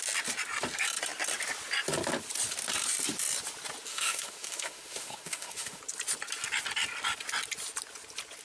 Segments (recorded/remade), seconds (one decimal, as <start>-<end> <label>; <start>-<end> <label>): 0.0-3.9 recorded; 3.9-5.8 remade; 5.8-8.4 recorded